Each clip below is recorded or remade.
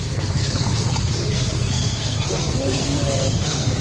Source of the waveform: remade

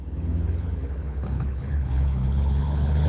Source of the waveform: remade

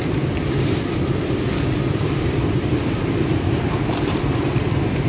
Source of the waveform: remade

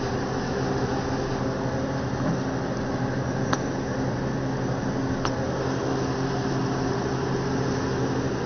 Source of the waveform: recorded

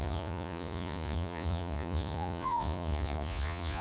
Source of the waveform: remade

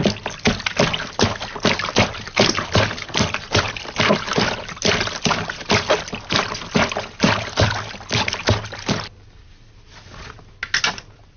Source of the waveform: recorded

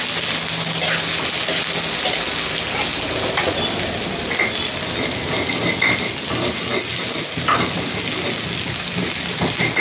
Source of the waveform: recorded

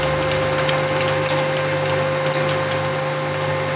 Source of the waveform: recorded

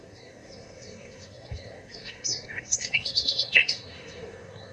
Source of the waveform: remade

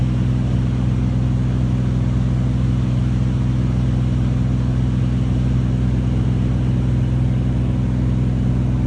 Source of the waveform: recorded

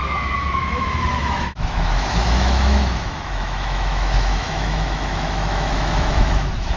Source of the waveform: remade